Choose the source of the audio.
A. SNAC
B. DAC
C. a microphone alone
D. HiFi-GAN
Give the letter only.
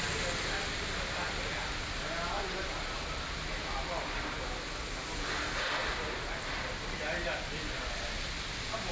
C